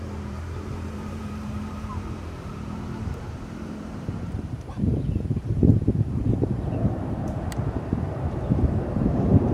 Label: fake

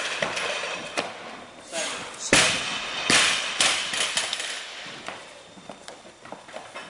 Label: fake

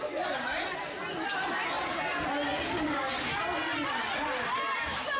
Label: real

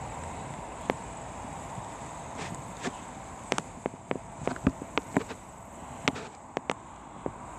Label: real